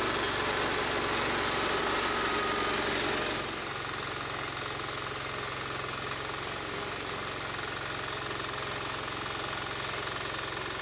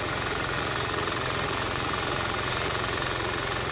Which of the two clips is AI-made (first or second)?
second